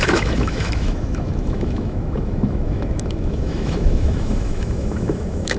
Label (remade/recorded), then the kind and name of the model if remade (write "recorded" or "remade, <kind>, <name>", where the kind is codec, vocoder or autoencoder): remade, autoencoder, DAC-VAE